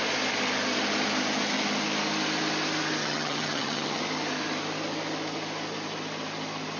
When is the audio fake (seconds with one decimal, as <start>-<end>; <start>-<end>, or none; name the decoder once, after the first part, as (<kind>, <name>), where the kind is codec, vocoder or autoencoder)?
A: 3.0-4.0 (vocoder, HiFi-GAN)